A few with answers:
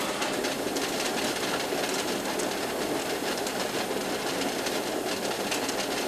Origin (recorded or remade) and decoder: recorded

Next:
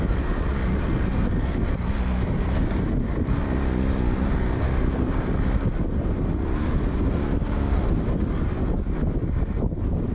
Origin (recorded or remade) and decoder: recorded